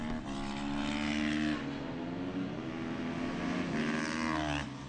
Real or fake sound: real